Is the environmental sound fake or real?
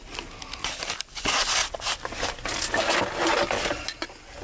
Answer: real